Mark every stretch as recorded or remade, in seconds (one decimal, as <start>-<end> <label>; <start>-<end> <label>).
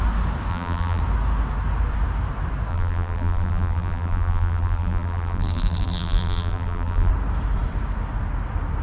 0.0-0.5 recorded; 0.5-1.0 remade; 1.0-2.7 recorded; 2.7-7.1 remade; 7.1-8.8 recorded